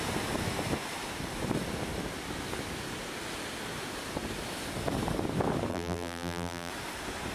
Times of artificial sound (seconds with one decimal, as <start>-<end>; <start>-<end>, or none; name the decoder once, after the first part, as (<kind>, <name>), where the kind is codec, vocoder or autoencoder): 5.7-6.7 (vocoder, BigVGAN v2)